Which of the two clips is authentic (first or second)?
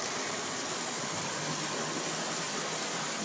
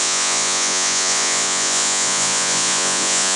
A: first